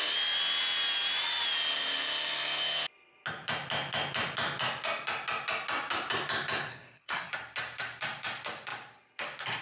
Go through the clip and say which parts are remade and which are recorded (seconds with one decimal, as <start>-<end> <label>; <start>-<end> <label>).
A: 0.0-6.7 recorded; 6.7-7.3 remade; 7.3-9.6 recorded